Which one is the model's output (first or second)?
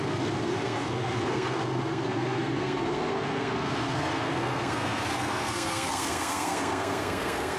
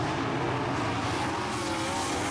first